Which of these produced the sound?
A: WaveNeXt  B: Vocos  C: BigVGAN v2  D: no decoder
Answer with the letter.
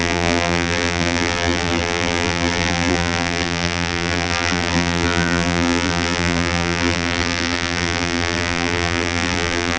C